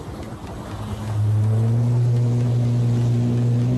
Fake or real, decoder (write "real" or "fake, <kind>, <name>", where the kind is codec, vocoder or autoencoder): real